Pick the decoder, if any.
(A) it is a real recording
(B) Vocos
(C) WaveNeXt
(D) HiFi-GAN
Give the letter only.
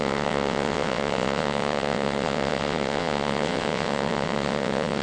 C